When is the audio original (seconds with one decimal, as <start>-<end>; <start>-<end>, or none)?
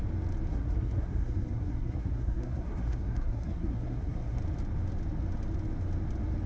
0.0-0.5; 4.4-6.5